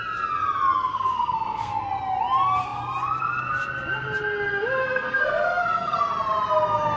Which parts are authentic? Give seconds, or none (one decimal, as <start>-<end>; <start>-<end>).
0.0-0.9; 1.9-4.8; 6.0-7.0